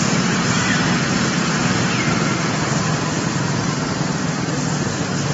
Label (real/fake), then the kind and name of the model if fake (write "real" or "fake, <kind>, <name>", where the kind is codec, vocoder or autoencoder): real